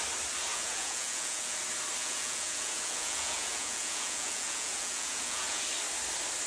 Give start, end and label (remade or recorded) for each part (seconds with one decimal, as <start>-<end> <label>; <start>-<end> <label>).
0.0-0.5 recorded; 0.5-1.6 remade; 1.6-2.0 recorded; 2.0-5.6 remade; 5.6-6.5 recorded

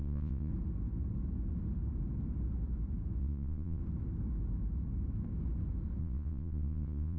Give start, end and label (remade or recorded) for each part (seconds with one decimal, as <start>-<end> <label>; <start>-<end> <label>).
0.0-0.5 remade; 0.5-3.2 recorded; 3.2-3.8 remade; 3.8-6.0 recorded; 6.0-7.2 remade

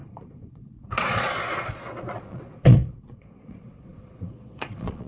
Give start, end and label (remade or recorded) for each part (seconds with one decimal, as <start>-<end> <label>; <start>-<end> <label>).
0.0-5.1 remade

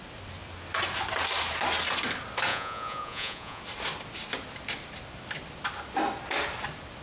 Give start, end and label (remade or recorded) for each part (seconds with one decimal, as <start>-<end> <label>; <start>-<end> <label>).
0.0-2.5 recorded; 2.5-3.6 remade; 3.6-7.0 recorded

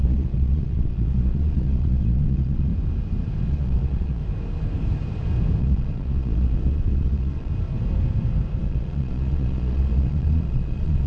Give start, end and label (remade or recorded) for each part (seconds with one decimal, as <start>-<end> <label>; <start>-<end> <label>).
0.0-2.7 remade; 2.7-3.5 recorded; 3.5-4.2 remade; 4.2-5.6 recorded; 5.6-7.5 remade; 7.5-8.6 recorded; 8.6-11.1 remade

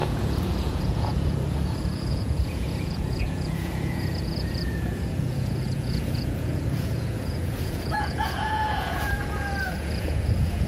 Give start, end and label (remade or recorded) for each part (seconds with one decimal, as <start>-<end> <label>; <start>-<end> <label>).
0.0-10.7 remade

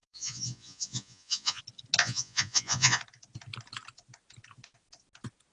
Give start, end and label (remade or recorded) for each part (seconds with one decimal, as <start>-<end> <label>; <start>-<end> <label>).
0.0-1.6 remade; 1.6-2.0 recorded; 2.0-3.0 remade; 3.0-5.5 recorded